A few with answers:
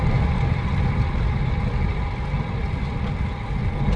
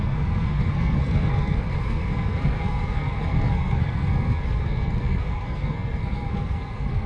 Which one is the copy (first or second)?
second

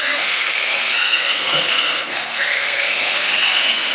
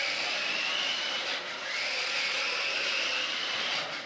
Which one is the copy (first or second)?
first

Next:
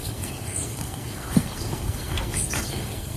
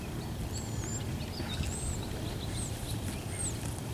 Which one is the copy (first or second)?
first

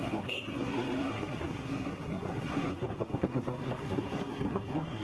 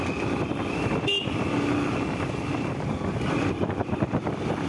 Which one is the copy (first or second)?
first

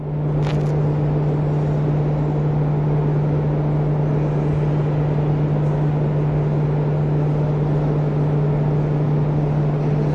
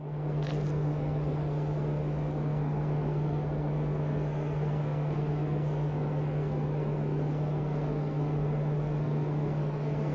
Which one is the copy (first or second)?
second